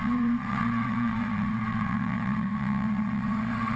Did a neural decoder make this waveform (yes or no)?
yes